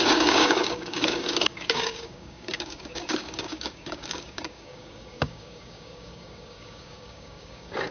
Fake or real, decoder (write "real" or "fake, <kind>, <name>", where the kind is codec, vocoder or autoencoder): fake, codec, DAC